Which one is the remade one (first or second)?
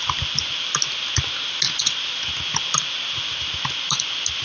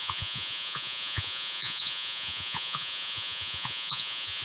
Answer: second